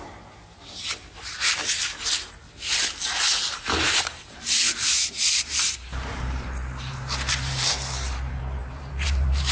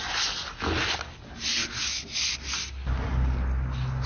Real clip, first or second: second